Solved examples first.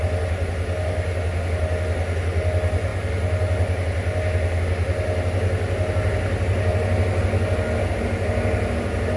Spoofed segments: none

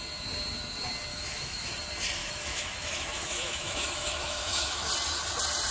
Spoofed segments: 1.1-1.7 (autoencoder, DAC-VAE); 2.2-4.9